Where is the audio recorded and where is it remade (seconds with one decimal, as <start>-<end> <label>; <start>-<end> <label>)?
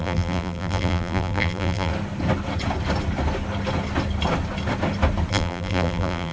0.0-1.9 remade; 1.9-5.3 recorded; 5.3-6.3 remade